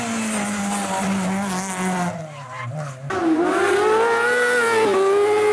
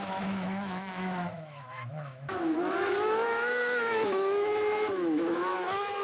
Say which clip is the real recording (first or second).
first